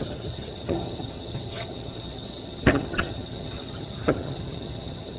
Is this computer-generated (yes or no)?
yes